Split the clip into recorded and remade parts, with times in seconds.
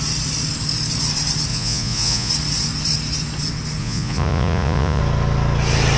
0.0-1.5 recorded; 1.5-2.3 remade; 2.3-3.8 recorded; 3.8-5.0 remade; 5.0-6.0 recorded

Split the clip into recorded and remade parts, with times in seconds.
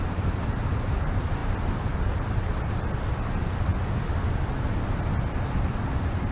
0.0-6.3 recorded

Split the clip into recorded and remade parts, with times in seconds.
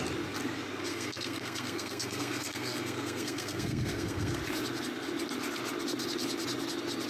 0.0-0.9 recorded; 0.9-4.4 remade; 4.4-7.1 recorded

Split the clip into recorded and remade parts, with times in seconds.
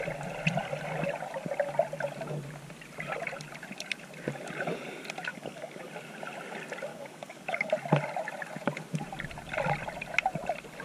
0.0-5.3 recorded; 5.3-5.9 remade; 5.9-6.9 recorded; 6.9-7.7 remade; 7.7-10.8 recorded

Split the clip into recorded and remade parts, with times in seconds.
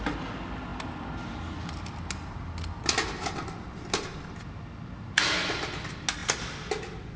0.0-7.2 recorded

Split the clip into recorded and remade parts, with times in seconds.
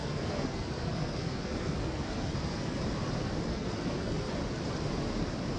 0.0-2.8 remade; 2.8-3.5 recorded; 3.5-4.3 remade; 4.3-5.6 recorded